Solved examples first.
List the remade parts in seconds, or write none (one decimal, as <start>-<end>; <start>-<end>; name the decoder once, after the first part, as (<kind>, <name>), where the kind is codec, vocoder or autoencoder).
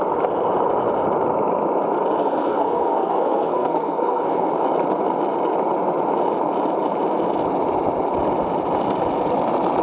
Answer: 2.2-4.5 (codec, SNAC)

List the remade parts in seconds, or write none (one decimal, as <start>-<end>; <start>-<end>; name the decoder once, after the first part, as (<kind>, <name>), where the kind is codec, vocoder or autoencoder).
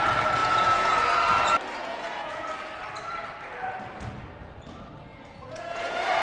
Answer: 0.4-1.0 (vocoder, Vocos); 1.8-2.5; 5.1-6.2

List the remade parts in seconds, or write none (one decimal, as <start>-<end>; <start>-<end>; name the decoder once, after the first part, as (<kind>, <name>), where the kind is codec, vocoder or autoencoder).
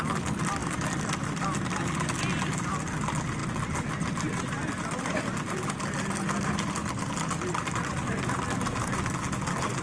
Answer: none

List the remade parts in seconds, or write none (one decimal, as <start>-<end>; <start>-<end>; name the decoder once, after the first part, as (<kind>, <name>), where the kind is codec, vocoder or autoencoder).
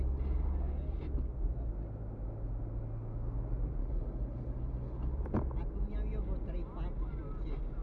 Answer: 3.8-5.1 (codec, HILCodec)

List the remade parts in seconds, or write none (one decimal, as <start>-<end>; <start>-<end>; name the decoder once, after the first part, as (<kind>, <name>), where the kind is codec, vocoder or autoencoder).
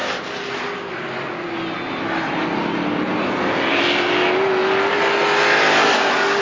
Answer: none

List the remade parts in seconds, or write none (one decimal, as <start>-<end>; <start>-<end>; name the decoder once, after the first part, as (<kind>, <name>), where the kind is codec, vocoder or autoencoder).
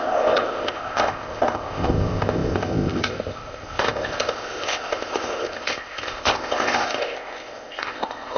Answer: 0.0-8.4 (codec, ZipCodec)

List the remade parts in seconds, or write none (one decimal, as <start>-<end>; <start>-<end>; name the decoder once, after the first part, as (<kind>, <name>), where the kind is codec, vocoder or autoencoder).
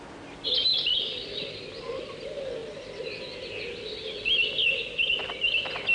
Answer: 0.7-2.0 (vocoder, BigVGAN v2)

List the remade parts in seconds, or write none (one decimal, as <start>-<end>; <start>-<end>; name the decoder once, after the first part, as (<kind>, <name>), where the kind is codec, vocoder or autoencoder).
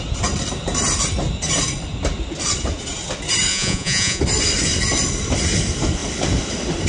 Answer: 3.5-4.2 (vocoder, Vocos)